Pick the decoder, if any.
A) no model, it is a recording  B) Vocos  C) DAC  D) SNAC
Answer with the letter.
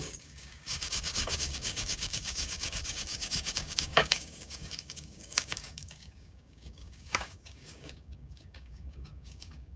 C